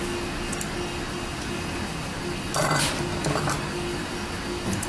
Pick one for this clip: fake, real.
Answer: real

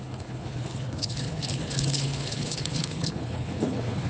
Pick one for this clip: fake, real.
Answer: fake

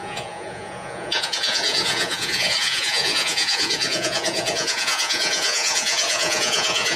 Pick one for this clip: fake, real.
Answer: fake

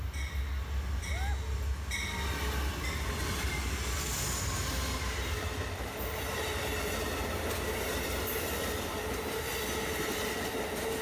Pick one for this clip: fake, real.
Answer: real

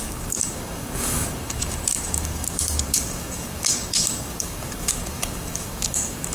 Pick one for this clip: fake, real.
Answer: fake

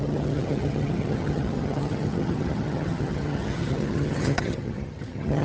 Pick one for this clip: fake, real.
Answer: fake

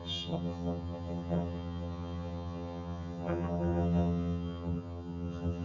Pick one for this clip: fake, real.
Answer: fake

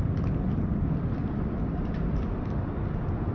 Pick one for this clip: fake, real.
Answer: real